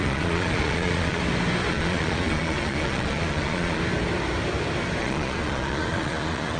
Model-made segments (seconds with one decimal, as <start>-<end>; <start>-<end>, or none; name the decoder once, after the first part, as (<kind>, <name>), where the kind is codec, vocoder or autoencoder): 0.0-1.2 (vocoder, Vocos); 1.7-3.8; 5.0-6.6